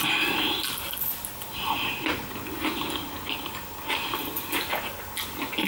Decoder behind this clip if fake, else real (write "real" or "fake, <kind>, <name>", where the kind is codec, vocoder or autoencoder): real